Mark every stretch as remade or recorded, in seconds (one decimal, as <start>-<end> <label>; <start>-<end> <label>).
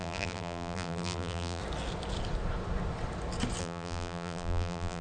0.0-1.6 remade; 1.6-3.6 recorded; 3.6-5.0 remade